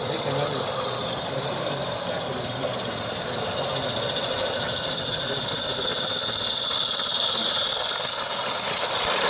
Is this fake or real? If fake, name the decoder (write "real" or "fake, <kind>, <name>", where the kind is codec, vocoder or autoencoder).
real